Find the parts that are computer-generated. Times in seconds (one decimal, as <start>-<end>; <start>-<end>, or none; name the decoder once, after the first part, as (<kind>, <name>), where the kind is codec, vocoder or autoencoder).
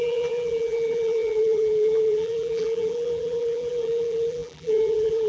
0.0-5.3 (vocoder, BigVGAN v2)